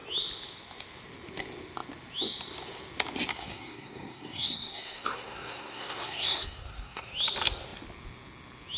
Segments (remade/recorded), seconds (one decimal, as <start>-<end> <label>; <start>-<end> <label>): 0.0-3.3 recorded; 3.3-7.1 remade; 7.1-8.8 recorded